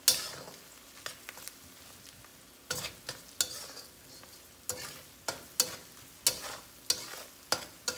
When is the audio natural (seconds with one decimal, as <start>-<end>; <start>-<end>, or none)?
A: 0.0-8.0